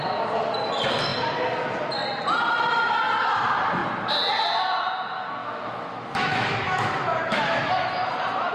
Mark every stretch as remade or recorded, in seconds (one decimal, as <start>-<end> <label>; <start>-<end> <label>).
0.0-5.4 recorded; 5.4-7.7 remade; 7.7-8.5 recorded